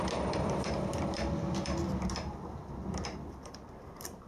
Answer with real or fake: fake